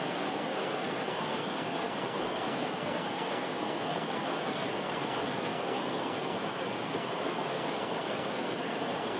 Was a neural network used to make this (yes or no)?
yes